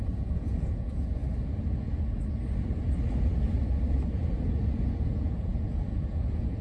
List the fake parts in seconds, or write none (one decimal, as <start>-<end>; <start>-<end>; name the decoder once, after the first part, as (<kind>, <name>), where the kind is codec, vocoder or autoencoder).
0.0-1.2 (vocoder, Vocos); 4.7-6.6